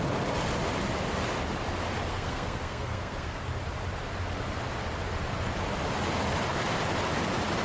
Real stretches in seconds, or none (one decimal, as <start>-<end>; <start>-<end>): 0.0-2.1; 3.6-7.6